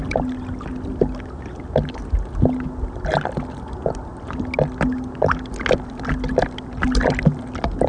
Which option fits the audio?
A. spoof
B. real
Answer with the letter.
B